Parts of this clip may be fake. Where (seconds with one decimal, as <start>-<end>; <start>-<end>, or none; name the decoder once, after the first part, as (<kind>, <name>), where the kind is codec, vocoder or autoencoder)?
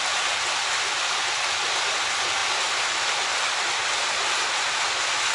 none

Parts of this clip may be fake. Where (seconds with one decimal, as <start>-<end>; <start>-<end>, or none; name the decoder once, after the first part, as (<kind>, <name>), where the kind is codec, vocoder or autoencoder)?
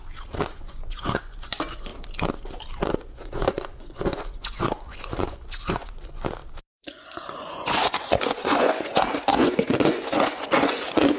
0.5-1.9 (vocoder, Vocos); 3.2-11.2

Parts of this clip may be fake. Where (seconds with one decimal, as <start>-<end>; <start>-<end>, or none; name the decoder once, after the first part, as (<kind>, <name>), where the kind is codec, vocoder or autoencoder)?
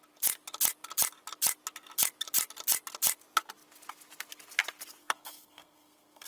5.0-6.3 (codec, SNAC)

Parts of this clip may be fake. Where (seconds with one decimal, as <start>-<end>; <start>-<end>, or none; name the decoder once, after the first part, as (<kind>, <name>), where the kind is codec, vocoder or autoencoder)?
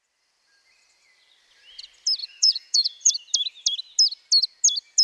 2.2-3.1 (vocoder, Vocos)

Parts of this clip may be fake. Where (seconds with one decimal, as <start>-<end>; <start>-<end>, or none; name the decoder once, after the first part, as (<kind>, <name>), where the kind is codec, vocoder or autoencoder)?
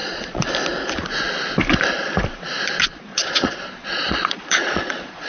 0.0-0.5 (vocoder, Vocos); 3.1-5.3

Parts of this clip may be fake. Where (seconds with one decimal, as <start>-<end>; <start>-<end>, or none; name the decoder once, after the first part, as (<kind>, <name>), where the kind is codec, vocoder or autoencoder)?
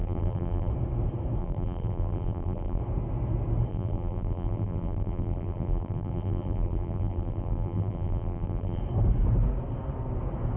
0.0-0.7 (vocoder, BigVGAN v2); 1.4-2.8; 3.7-8.8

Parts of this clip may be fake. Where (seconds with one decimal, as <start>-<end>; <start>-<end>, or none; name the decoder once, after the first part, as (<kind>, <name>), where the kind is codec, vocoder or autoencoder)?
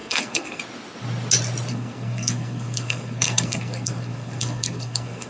0.0-0.6 (codec, SNAC); 1.7-5.3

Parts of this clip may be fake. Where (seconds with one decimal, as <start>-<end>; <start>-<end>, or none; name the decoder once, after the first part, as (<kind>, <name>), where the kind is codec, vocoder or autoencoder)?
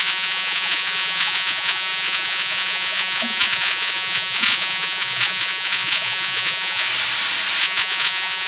0.0-6.9 (vocoder, Vocos); 7.6-8.5